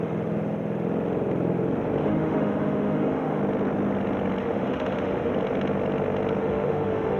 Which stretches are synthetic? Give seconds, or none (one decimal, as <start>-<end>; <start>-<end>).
2.0-3.4; 4.4-5.3; 6.4-7.2